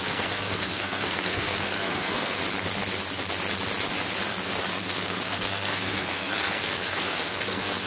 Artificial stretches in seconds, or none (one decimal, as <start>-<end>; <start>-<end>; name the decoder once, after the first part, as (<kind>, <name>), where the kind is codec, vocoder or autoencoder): 0.0-2.4 (codec, SNAC); 4.7-7.9